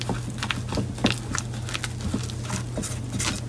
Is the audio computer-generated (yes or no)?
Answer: no